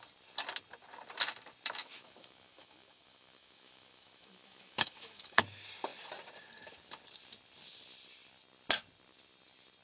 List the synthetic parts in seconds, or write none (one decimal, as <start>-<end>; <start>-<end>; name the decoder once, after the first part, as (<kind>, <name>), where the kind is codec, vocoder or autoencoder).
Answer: 1.8-5.4 (autoencoder, DAC-VAE)